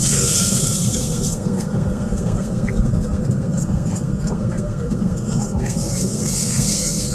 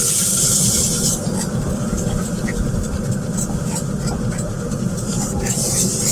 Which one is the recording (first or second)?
second